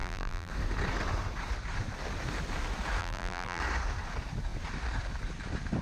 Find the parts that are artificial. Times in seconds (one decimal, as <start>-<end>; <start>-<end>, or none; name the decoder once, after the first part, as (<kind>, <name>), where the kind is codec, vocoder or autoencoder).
0.0-0.5 (vocoder, BigVGAN v2); 3.0-3.6